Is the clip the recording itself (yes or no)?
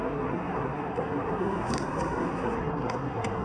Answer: no